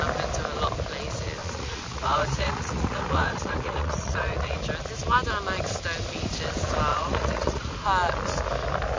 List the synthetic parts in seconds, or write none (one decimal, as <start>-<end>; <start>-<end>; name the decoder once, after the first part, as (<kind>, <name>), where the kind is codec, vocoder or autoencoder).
1.4-4.6 (vocoder, Vocos); 6.9-7.7